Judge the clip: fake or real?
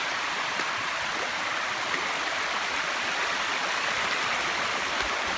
real